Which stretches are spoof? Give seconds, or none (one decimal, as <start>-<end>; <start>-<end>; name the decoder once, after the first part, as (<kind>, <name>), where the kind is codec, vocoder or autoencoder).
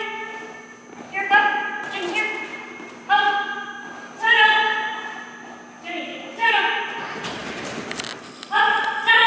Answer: 2.5-3.3 (vocoder, BigVGAN v2); 6.1-6.8